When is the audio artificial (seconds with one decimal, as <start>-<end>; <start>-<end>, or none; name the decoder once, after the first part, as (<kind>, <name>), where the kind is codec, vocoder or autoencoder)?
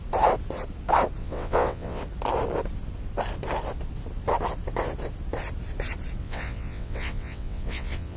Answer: 1.2-2.0 (vocoder, WaveNeXt); 6.2-8.2